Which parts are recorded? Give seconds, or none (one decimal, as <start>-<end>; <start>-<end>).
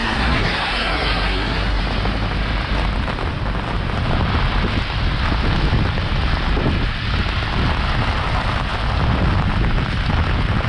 1.8-10.7